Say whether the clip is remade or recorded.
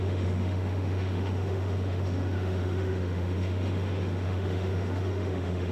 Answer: remade